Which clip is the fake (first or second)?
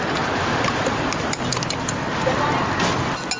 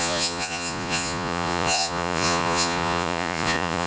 second